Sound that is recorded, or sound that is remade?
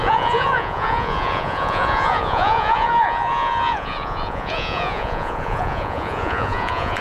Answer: remade